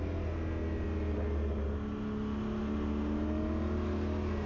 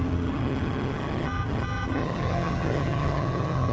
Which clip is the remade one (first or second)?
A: second